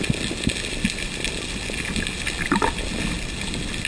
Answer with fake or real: real